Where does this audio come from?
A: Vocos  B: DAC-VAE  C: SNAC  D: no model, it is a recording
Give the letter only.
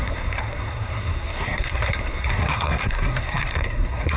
C